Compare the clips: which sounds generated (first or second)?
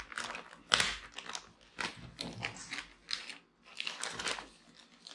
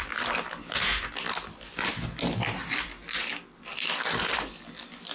second